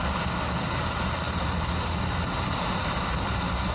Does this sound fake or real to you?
real